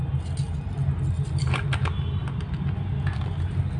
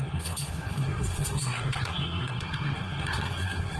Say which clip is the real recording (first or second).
first